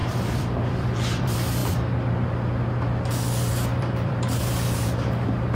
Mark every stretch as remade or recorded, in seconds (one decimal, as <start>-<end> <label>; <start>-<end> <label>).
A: 0.0-1.6 remade; 1.6-3.5 recorded; 3.5-5.5 remade